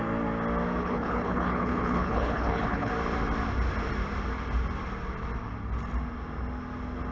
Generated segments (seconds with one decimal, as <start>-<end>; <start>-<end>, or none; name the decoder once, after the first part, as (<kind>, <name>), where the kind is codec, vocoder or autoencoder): 0.8-2.9 (codec, HILCodec)